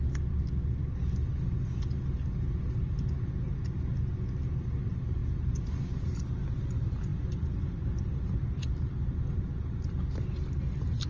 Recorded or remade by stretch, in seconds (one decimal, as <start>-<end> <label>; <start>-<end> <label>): 0.0-7.1 recorded; 7.1-9.6 remade; 9.6-11.1 recorded